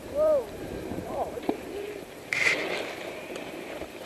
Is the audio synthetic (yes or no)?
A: yes